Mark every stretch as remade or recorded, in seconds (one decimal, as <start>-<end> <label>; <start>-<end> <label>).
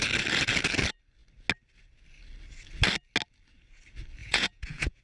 0.0-4.2 recorded; 4.2-5.0 remade